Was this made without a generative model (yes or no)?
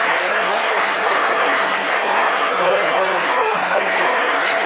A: no